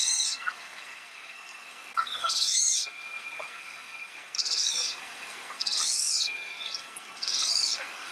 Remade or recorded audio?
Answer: remade